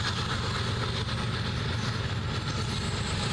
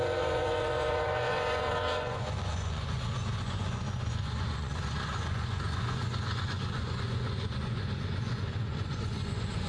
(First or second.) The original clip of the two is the first